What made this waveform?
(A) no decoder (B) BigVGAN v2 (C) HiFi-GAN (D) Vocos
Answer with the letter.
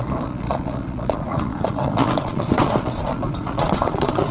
D